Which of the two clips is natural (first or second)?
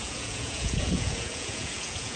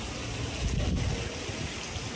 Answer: second